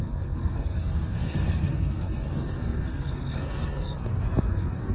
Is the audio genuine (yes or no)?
no